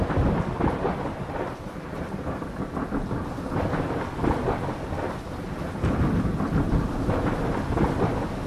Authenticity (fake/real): real